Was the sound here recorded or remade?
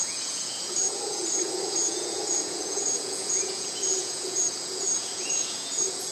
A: remade